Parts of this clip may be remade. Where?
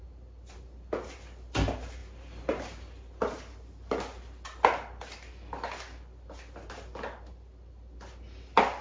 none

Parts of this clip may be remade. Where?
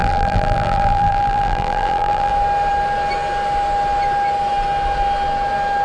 0.0-2.3 (vocoder, BigVGAN v2)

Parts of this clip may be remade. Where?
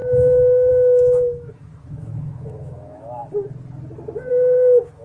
0.0-3.2 (autoencoder, DAC-VAE); 4.3-5.0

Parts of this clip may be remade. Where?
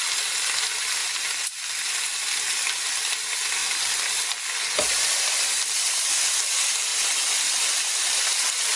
none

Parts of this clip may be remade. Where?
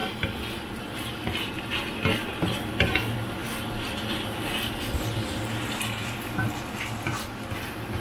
none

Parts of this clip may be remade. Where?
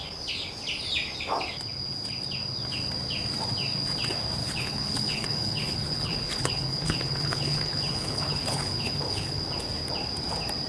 4.4-9.4 (codec, HILCodec)